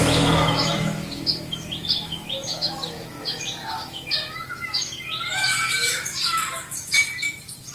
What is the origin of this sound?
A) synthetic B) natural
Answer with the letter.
A